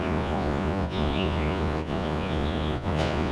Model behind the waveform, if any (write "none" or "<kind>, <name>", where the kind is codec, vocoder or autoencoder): vocoder, Vocos